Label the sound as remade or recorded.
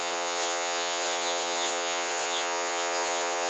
remade